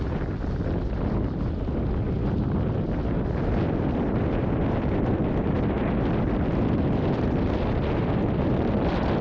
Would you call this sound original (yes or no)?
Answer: yes